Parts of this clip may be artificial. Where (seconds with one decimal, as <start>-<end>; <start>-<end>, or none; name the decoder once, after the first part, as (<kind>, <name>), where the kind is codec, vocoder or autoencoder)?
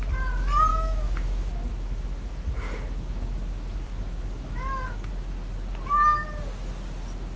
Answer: 0.7-5.1 (autoencoder, DAC-VAE)